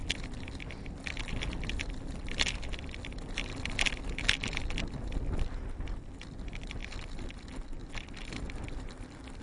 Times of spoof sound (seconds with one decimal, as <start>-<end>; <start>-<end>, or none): 0.0-3.5; 4.3-6.8; 8.5-9.4